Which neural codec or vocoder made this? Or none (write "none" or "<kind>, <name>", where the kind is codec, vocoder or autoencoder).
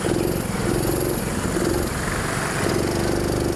none